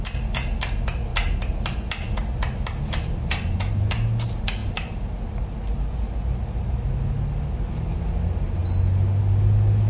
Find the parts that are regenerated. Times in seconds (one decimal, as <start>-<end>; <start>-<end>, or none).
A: none